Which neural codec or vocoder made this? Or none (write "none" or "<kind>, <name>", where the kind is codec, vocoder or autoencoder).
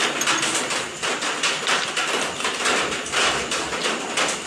none